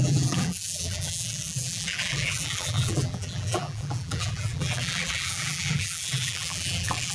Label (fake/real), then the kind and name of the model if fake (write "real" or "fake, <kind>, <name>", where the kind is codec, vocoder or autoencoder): fake, vocoder, BigVGAN v2